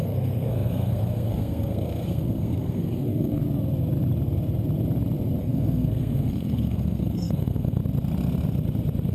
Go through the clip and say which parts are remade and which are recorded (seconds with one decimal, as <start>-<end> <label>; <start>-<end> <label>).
0.0-3.4 remade; 3.4-5.4 recorded; 5.4-7.8 remade; 7.8-9.1 recorded